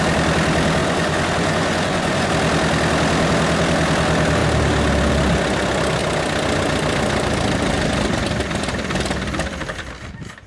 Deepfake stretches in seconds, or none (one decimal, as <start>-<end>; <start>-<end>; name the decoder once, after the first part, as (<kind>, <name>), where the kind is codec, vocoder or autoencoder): 0.8-2.3 (vocoder, Vocos)